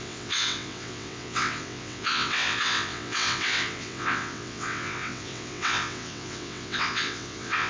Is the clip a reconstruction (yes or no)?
yes